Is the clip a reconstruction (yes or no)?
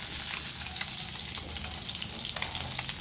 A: no